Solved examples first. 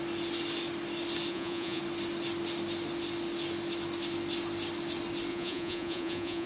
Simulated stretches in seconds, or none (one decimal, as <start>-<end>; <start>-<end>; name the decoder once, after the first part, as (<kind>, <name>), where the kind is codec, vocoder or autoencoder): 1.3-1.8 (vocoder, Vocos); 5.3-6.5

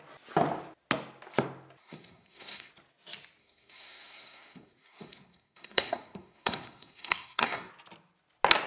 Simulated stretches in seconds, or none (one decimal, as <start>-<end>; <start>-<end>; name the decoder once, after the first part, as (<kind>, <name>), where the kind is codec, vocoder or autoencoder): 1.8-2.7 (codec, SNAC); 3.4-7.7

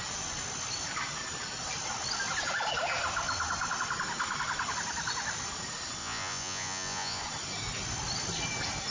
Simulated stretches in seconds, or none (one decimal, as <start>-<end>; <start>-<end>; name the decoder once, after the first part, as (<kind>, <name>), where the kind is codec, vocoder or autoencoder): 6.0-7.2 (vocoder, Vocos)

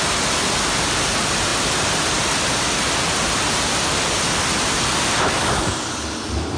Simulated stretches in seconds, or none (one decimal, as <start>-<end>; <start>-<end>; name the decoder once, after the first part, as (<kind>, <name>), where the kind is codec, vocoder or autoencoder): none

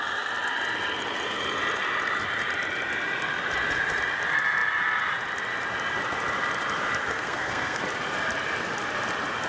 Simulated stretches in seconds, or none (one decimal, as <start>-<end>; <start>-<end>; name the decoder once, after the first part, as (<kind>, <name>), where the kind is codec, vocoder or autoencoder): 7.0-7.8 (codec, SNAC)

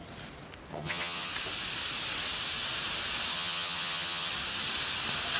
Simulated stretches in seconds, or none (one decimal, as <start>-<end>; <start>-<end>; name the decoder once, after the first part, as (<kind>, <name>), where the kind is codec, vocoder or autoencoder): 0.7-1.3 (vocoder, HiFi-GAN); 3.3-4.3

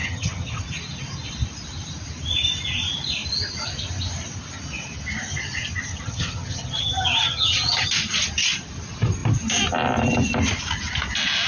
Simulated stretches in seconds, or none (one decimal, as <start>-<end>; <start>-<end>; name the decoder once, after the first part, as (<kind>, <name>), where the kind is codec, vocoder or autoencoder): 0.0-0.6 (vocoder, HiFi-GAN); 5.9-7.9

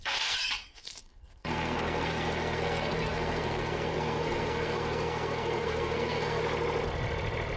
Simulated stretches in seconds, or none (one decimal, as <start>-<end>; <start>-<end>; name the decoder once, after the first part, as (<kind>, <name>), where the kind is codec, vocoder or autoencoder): 0.0-6.4 (codec, SNAC)